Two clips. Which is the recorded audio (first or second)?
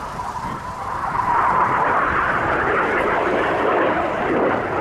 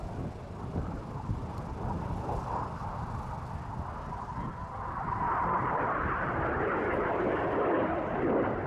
second